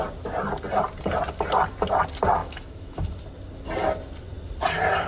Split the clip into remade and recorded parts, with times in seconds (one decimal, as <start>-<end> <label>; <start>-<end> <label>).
0.0-2.4 recorded; 2.4-3.0 remade; 3.0-5.1 recorded